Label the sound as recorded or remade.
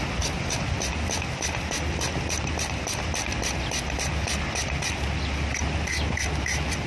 recorded